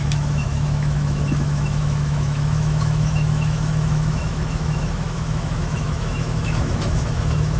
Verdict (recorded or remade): remade